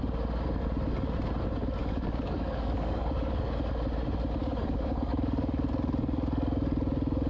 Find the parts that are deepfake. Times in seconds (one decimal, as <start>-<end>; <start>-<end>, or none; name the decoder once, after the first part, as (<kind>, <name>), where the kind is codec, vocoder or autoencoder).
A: 1.8-3.6 (codec, DAC); 4.4-5.7